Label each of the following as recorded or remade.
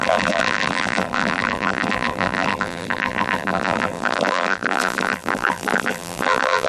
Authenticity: remade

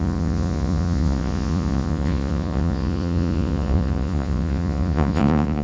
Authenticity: remade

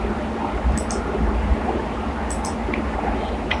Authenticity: recorded